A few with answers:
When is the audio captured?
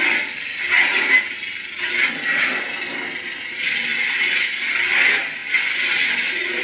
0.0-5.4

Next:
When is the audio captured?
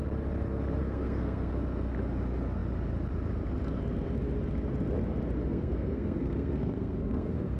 0.0-0.8; 1.5-5.4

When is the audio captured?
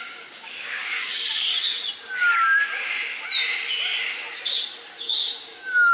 1.5-5.0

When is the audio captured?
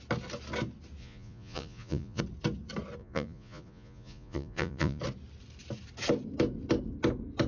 0.0-1.0; 2.2-3.0; 5.0-7.5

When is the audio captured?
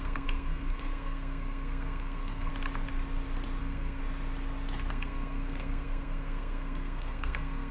2.5-3.6; 4.0-4.9